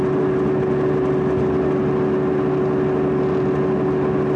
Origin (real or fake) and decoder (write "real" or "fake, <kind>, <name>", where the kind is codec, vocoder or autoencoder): real